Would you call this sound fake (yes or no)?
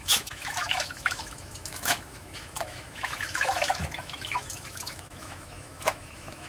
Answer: yes